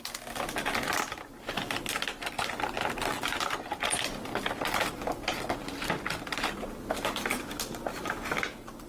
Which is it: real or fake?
real